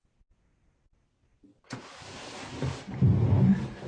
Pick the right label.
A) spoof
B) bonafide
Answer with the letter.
B